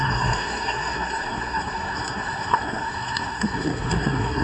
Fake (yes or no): yes